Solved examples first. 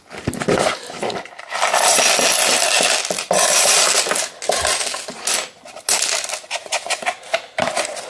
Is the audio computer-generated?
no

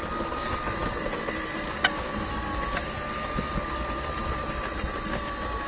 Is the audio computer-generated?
no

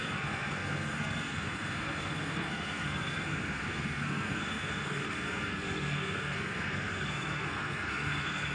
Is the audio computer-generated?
yes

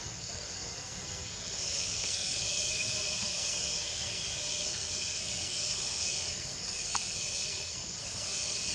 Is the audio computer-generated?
yes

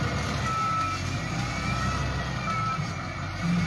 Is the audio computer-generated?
no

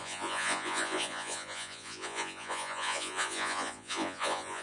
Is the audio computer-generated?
yes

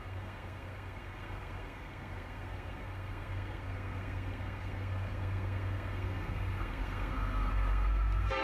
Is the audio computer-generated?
yes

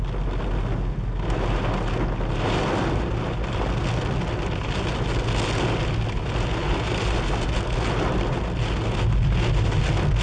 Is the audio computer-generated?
no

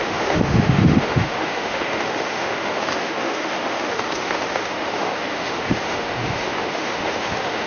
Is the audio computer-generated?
yes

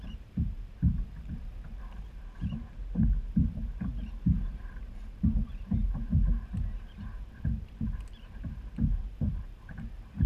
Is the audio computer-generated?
yes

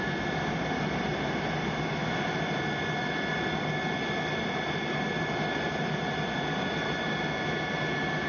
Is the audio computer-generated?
no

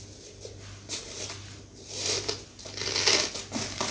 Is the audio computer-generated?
no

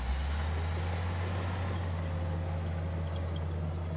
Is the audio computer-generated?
no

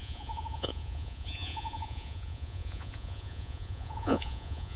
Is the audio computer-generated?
yes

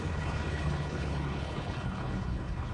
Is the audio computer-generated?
yes